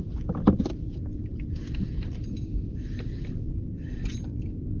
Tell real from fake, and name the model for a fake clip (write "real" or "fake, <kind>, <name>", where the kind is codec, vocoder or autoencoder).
fake, vocoder, BigVGAN v2